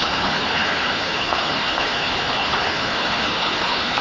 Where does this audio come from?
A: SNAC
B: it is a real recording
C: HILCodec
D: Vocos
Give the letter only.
C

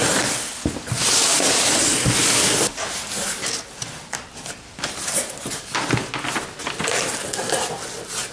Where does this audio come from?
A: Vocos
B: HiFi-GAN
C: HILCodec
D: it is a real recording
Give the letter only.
D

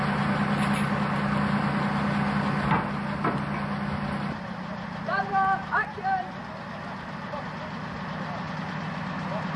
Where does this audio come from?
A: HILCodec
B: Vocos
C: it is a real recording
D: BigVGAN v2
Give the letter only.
C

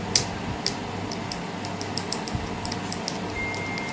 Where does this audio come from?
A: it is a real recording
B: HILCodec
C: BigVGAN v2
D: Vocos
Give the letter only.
A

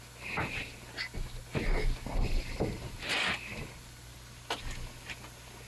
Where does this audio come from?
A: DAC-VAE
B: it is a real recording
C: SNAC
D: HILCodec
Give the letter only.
B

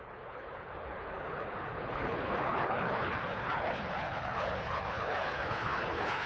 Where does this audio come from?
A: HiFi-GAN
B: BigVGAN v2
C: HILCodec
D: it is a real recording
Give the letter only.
C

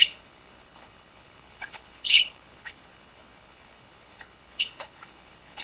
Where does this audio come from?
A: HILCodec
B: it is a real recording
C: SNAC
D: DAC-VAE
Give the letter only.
A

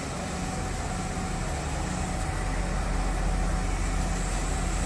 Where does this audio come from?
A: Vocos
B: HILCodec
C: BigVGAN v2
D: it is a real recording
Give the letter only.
D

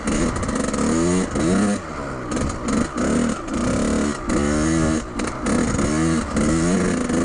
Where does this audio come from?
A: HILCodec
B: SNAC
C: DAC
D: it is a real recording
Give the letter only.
D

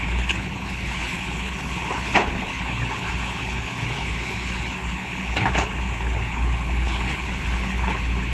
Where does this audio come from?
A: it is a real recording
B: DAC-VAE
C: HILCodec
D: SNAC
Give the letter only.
C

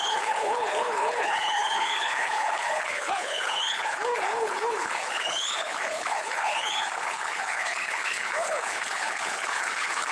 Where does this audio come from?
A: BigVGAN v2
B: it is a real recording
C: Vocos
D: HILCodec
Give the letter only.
D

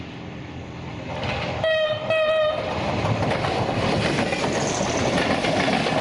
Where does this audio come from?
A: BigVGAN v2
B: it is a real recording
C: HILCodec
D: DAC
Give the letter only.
B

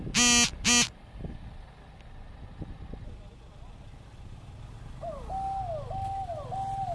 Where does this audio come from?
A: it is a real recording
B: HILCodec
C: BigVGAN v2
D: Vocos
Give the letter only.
A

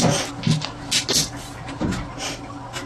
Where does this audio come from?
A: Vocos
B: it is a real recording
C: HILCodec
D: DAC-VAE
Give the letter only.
B